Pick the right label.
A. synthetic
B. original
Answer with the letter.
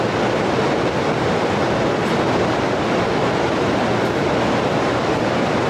A